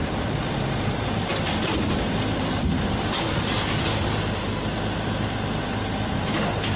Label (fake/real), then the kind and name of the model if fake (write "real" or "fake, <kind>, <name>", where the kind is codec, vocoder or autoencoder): real